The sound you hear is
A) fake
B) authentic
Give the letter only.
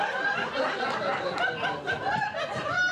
B